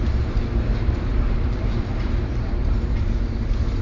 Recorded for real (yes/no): no